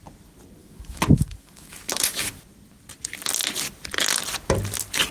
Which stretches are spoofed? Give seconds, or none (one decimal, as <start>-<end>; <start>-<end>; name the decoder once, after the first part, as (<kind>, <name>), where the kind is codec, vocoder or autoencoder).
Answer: 0.6-2.4 (autoencoder, DAC-VAE)